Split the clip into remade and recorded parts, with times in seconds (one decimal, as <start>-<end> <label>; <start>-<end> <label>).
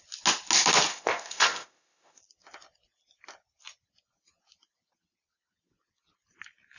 0.0-0.9 recorded; 0.9-2.2 remade; 2.2-6.8 recorded